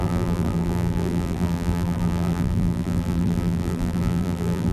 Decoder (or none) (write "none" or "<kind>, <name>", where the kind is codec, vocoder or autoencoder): vocoder, BigVGAN v2